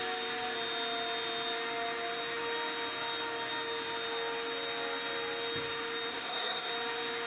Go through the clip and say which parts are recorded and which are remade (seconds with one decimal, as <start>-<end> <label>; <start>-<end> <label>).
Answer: 0.0-6.1 recorded; 6.1-6.7 remade; 6.7-7.3 recorded